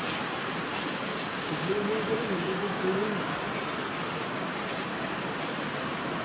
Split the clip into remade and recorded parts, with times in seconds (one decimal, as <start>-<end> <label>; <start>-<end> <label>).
0.0-1.1 recorded; 1.1-3.5 remade; 3.5-6.2 recorded